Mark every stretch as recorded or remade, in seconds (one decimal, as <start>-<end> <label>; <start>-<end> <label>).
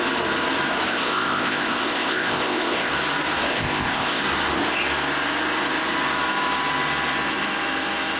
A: 0.0-0.9 recorded; 0.9-2.9 remade; 2.9-3.5 recorded; 3.5-4.2 remade; 4.2-8.2 recorded